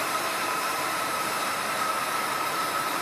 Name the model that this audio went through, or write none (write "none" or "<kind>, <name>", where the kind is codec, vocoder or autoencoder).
vocoder, BigVGAN v2